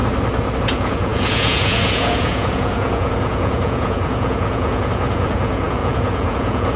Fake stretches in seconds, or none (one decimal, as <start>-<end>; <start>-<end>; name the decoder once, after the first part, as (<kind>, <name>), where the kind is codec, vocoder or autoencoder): 0.6-6.8 (vocoder, Vocos)